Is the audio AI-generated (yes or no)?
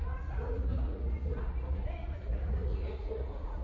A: yes